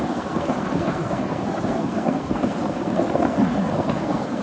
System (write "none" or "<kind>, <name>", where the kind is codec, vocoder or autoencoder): codec, SNAC